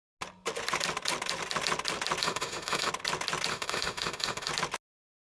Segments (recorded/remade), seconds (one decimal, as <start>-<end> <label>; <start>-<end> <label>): 0.0-2.2 recorded; 2.2-2.9 remade; 2.9-3.5 recorded; 3.5-4.5 remade; 4.5-5.3 recorded